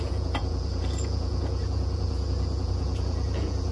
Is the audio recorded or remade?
remade